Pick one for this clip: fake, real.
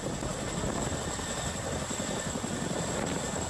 real